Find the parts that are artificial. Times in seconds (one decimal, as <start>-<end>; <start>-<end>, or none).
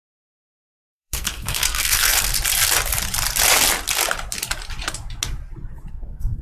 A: 0.0-2.3; 5.9-6.4